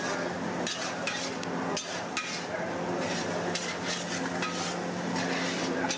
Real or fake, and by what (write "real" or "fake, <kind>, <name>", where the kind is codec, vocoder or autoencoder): real